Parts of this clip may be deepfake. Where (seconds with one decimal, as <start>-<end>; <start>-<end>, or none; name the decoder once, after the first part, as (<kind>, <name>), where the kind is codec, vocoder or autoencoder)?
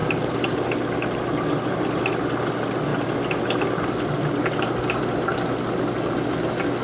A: none